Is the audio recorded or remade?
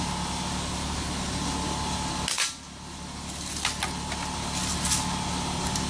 recorded